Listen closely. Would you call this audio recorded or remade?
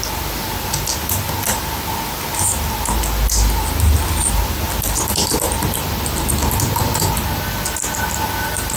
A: recorded